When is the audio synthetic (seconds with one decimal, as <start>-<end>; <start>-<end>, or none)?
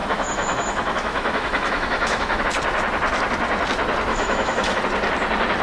0.0-2.4; 4.1-4.8